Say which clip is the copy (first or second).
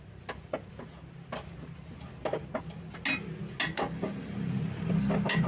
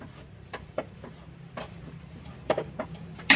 second